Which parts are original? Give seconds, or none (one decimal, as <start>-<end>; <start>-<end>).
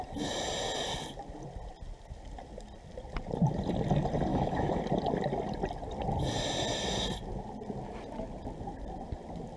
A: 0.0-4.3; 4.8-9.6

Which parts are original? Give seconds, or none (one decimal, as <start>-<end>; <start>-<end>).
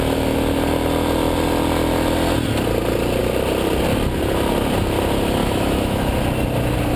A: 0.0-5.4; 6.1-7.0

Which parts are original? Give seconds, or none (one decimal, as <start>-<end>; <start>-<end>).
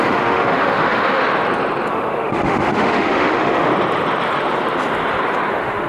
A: 1.2-1.9; 3.7-5.5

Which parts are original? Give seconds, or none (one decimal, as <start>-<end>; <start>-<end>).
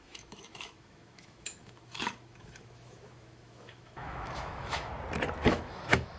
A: 4.9-5.4